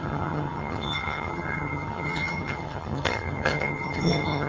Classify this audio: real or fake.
fake